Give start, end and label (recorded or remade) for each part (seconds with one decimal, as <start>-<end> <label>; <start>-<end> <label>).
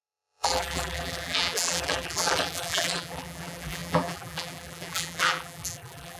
0.0-6.2 remade